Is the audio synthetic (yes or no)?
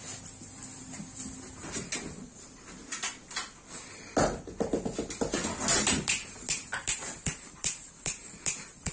no